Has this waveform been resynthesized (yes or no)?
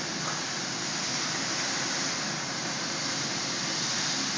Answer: no